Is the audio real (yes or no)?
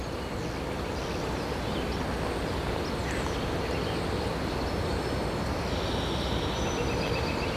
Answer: yes